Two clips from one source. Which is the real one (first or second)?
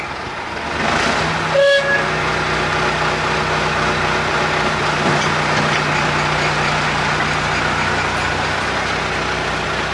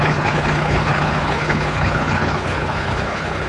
first